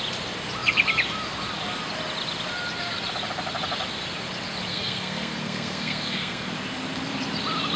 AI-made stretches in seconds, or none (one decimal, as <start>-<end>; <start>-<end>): 4.7-6.5